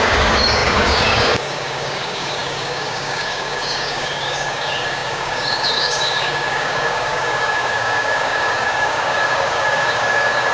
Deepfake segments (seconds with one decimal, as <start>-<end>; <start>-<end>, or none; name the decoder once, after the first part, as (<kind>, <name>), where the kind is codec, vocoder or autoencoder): 0.0-10.5 (codec, DAC)